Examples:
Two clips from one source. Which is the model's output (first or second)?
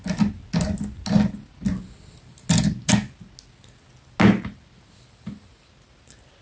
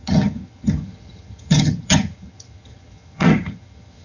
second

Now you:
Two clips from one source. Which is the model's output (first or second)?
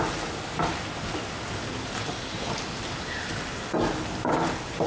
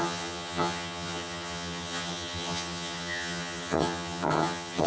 second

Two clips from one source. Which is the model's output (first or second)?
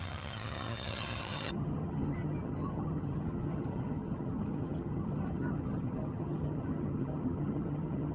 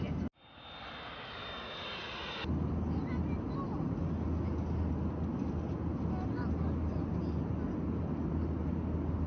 first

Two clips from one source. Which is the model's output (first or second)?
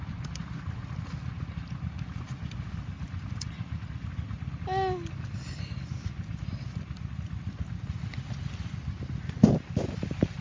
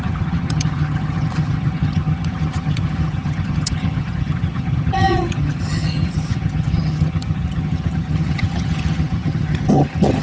second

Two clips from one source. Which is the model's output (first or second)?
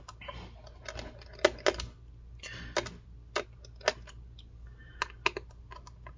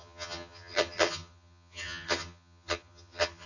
second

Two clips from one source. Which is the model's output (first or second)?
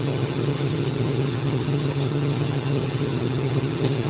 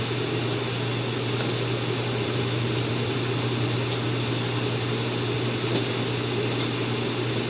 first